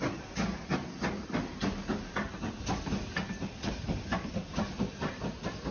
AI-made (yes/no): no